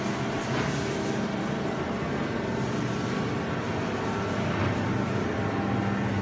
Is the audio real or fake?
real